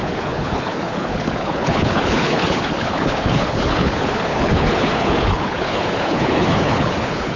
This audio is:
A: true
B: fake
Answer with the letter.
B